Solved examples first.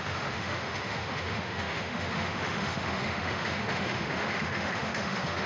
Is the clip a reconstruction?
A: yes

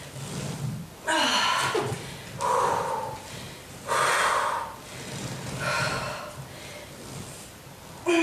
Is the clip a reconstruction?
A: no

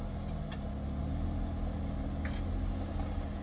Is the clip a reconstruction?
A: no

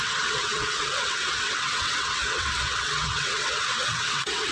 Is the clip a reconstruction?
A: yes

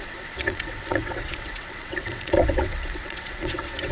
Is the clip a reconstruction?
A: yes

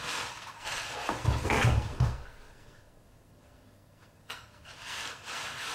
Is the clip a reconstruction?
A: yes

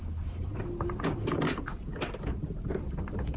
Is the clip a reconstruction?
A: no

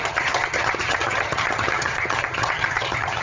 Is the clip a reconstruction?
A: yes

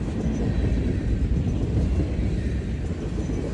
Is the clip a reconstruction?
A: no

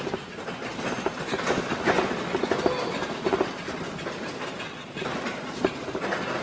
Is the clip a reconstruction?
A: no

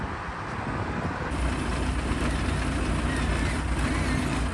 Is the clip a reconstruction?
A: no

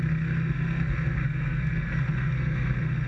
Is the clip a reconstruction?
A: yes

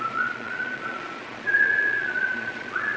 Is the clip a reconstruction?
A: yes